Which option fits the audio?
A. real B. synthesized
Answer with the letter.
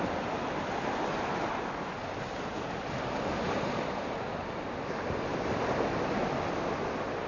A